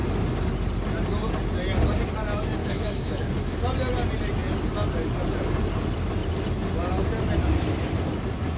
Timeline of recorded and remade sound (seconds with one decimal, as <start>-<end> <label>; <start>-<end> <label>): 0.0-2.6 recorded; 2.6-3.2 remade; 3.2-8.6 recorded